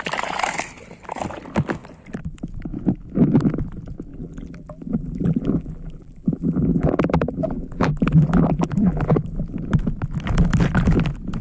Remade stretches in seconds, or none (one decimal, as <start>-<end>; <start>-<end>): 4.1-9.1